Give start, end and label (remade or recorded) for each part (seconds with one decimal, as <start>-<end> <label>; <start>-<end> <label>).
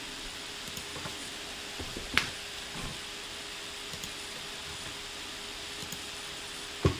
0.0-1.1 recorded; 1.1-2.3 remade; 2.3-7.0 recorded